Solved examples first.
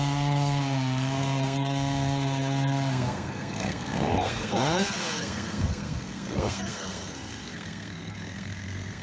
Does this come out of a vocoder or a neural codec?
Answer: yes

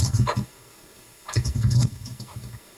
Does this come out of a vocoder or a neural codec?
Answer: yes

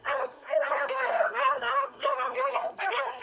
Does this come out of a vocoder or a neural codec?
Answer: yes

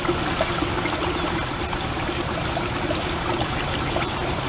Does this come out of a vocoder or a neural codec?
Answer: no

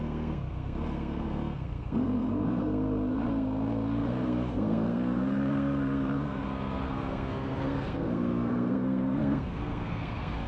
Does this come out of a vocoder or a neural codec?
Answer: yes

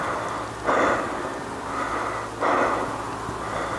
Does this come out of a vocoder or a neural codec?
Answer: no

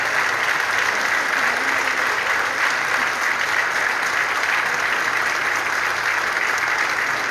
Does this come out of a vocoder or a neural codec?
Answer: no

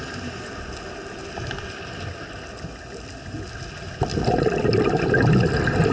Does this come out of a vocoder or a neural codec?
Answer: no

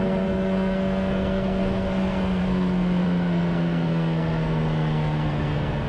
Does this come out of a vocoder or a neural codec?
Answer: yes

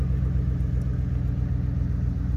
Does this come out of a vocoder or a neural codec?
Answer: no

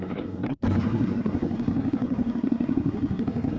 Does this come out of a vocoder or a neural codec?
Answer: yes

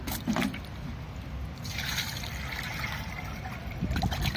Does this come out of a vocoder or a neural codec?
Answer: no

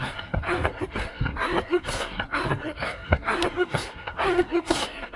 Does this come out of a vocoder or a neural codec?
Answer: yes